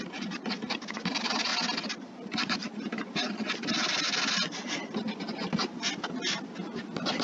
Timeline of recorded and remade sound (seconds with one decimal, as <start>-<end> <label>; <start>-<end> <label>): 0.0-7.2 recorded